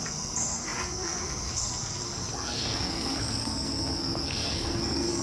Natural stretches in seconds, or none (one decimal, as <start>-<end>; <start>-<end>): none